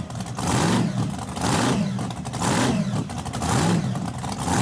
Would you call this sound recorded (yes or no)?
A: yes